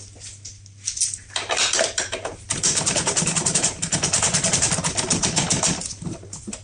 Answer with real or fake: real